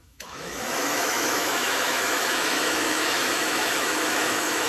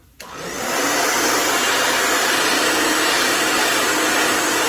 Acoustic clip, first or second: second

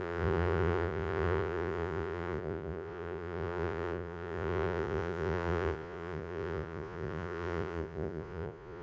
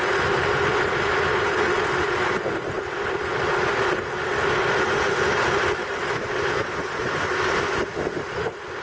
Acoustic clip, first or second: second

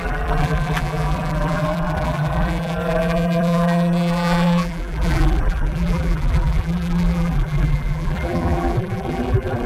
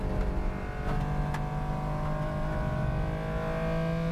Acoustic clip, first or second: second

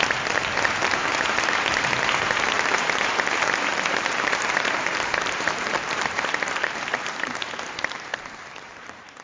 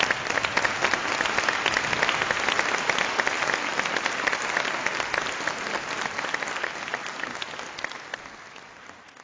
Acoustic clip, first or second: second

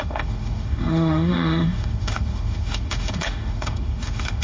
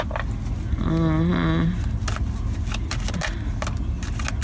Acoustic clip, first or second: second